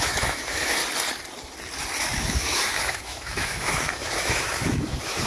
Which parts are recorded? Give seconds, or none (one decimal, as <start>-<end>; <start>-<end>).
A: 0.8-2.0